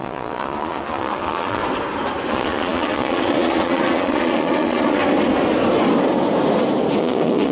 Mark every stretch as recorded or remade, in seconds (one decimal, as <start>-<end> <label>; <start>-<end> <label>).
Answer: 0.0-1.6 remade; 1.6-2.3 recorded; 2.3-5.0 remade; 5.0-7.0 recorded; 7.0-7.5 remade